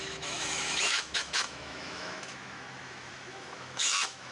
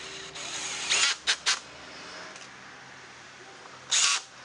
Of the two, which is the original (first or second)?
second